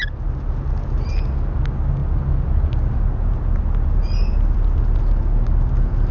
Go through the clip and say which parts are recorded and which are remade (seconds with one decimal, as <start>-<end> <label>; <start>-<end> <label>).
0.0-6.1 recorded